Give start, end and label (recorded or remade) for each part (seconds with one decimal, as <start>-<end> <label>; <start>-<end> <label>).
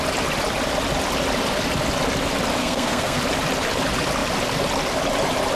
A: 0.0-2.6 recorded; 2.6-3.2 remade; 3.2-5.5 recorded